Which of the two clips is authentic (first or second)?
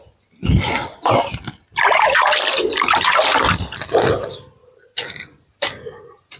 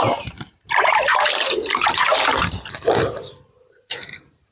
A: first